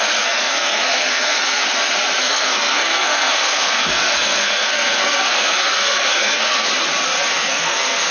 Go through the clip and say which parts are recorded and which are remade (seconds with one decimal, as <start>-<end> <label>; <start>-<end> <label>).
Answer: 0.0-1.6 remade; 1.6-2.2 recorded; 2.2-6.7 remade; 6.7-7.3 recorded; 7.3-8.1 remade